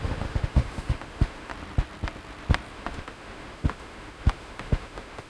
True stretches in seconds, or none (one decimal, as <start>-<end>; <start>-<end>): 1.5-2.7